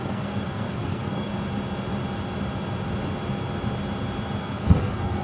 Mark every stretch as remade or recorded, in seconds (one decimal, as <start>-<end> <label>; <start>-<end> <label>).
0.0-1.3 remade; 1.3-4.4 recorded; 4.4-5.2 remade